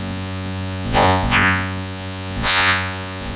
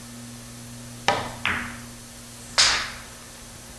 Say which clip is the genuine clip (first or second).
second